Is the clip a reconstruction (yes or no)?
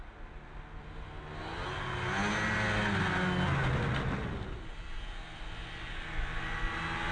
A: no